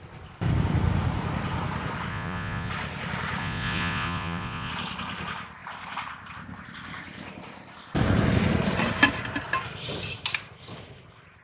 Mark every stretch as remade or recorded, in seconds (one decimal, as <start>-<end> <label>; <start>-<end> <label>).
0.0-2.1 recorded; 2.1-2.7 remade; 2.7-3.4 recorded; 3.4-4.7 remade; 4.7-11.4 recorded